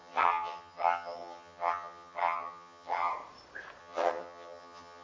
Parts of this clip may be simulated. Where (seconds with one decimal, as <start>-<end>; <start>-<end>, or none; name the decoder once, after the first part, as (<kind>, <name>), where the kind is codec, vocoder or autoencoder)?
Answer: 0.0-3.1 (vocoder, HiFi-GAN); 3.8-5.0